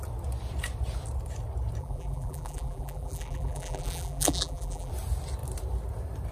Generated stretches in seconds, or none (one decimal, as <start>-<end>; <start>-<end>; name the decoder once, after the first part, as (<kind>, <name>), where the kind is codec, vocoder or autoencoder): 1.8-4.9 (vocoder, BigVGAN v2)